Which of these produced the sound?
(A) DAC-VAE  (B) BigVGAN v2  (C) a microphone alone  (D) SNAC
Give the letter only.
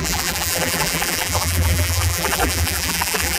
B